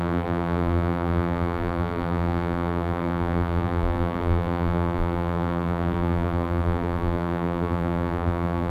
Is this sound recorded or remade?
remade